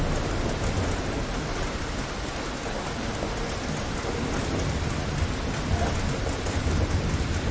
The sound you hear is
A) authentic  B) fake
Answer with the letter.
A